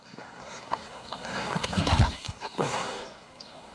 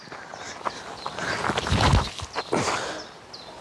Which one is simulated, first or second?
first